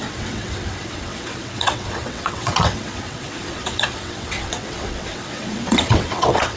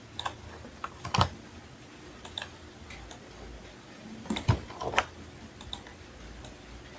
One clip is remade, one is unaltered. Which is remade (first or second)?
first